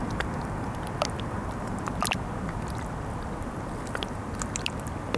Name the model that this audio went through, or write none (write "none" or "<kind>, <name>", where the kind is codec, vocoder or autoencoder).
none